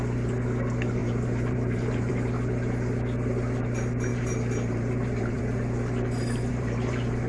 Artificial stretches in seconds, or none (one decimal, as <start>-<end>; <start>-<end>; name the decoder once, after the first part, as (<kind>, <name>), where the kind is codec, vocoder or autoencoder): 1.0-2.1 (vocoder, BigVGAN v2); 4.1-5.4; 6.5-7.3